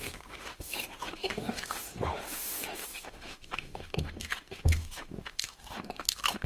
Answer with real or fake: fake